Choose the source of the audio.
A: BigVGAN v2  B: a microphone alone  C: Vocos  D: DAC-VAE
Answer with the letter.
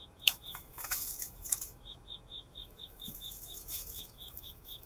D